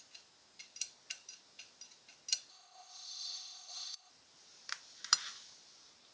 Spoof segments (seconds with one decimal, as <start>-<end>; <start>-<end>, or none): 2.5-4.1